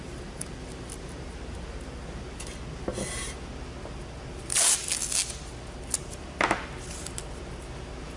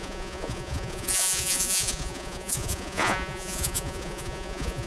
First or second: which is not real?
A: second